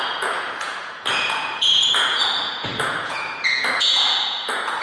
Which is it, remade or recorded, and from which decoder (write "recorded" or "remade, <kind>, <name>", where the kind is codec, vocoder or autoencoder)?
remade, vocoder, Vocos